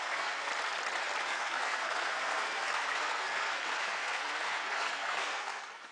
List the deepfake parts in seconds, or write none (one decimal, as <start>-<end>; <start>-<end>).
0.0-0.5; 1.2-5.9

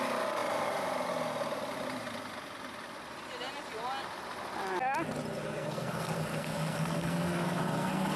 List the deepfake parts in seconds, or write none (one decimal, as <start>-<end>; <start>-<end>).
5.4-8.2

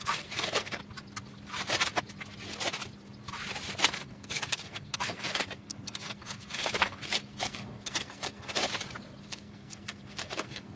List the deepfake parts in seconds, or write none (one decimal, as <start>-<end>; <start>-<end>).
0.0-0.8; 3.8-8.6; 9.2-10.8

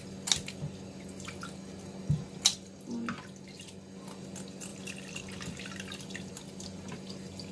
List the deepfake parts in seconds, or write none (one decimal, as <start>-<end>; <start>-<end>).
none

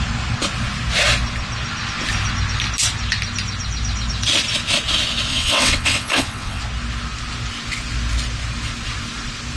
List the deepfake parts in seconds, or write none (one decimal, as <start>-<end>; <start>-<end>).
5.3-6.6